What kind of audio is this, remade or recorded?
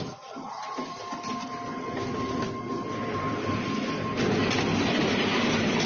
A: recorded